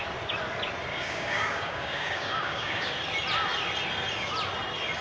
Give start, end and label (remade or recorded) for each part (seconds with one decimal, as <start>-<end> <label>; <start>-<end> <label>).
0.0-0.9 recorded; 0.9-2.9 remade; 2.9-5.0 recorded